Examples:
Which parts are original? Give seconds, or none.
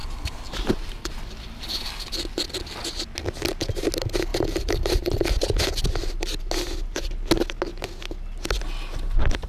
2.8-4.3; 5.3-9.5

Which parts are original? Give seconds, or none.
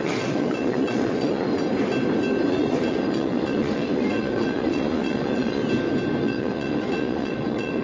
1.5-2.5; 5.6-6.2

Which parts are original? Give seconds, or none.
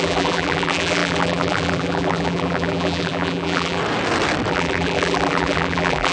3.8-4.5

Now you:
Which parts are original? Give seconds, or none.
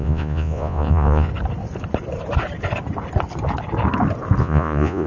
1.3-4.4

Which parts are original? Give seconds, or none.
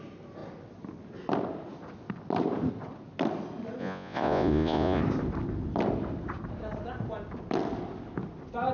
0.0-3.8; 5.0-8.7